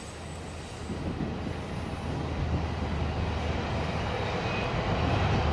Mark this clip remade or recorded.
recorded